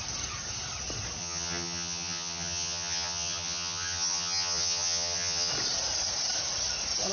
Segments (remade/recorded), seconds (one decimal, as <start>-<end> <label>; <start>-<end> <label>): 0.0-1.2 recorded; 1.2-5.5 remade; 5.5-7.1 recorded